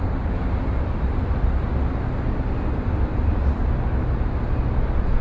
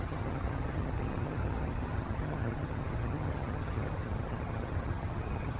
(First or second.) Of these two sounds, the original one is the first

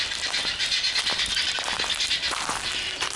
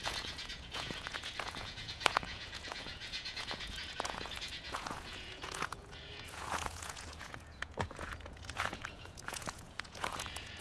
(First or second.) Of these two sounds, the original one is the first